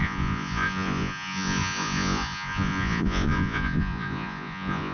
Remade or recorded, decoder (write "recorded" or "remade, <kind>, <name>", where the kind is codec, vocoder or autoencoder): remade, vocoder, Vocos